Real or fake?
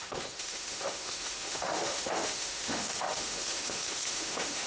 fake